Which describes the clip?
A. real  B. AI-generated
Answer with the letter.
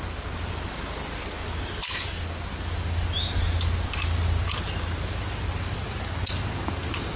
A